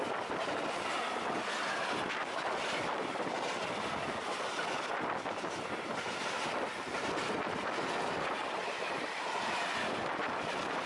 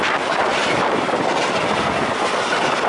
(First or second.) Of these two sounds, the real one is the second